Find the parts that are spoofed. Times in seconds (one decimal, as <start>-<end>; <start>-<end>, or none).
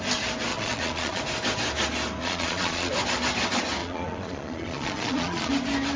0.5-1.2; 2.2-2.9; 3.8-5.5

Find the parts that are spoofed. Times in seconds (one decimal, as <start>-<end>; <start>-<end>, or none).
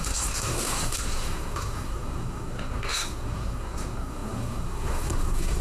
0.0-5.6